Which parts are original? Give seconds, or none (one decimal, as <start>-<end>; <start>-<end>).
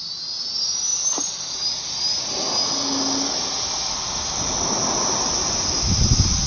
0.0-6.5